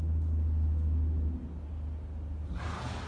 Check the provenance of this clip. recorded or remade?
recorded